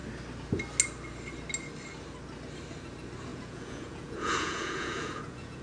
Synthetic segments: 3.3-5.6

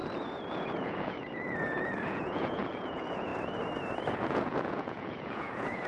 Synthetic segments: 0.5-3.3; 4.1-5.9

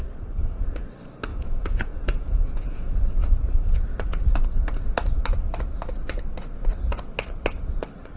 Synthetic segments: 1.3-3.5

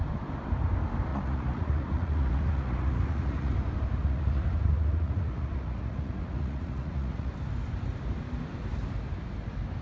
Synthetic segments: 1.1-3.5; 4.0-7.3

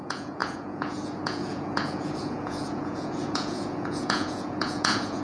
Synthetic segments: 0.0-5.2